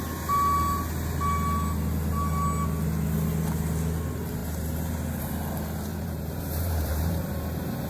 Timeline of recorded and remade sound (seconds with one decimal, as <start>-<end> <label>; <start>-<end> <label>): 0.0-4.4 recorded; 4.4-5.2 remade; 5.2-5.9 recorded; 5.9-7.9 remade